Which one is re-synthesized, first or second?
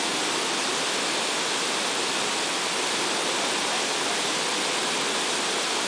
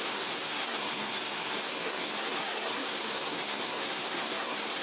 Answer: second